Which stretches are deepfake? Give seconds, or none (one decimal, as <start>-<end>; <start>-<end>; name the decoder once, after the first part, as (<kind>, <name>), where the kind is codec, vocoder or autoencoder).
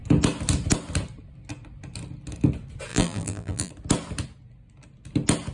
2.9-3.7 (vocoder, BigVGAN v2)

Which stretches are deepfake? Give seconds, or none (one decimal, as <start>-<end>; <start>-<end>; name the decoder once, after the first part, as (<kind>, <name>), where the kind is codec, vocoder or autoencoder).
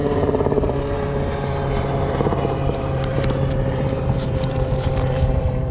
0.0-5.7 (vocoder, BigVGAN v2)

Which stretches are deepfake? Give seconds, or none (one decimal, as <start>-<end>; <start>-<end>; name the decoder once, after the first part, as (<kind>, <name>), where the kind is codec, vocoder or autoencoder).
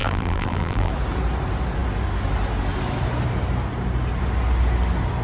0.0-0.9 (vocoder, BigVGAN v2)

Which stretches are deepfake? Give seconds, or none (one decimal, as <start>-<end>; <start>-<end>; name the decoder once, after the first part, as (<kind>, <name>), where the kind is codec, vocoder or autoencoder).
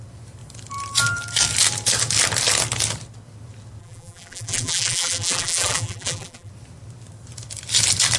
3.8-6.5 (vocoder, BigVGAN v2)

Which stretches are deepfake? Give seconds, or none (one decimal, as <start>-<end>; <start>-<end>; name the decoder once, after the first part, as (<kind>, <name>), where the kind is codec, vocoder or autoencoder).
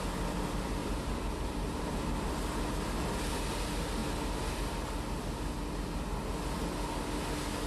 0.8-2.3 (vocoder, BigVGAN v2)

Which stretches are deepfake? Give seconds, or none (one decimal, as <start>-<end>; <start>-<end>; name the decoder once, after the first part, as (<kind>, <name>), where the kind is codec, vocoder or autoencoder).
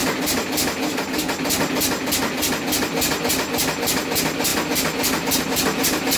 none